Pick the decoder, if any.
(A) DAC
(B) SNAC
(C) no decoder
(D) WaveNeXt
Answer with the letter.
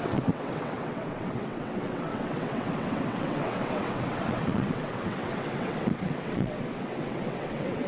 D